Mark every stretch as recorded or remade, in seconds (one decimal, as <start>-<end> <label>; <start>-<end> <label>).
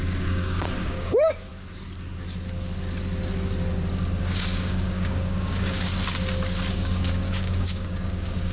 0.0-1.5 remade; 1.5-4.2 recorded; 4.2-5.9 remade; 5.9-6.7 recorded; 6.7-8.5 remade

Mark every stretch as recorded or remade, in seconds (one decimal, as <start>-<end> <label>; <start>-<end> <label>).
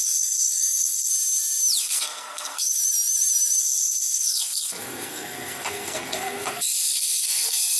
0.0-1.1 remade; 1.1-1.8 recorded; 1.8-2.8 remade; 2.8-3.6 recorded; 3.6-7.8 remade